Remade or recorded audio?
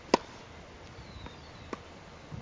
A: recorded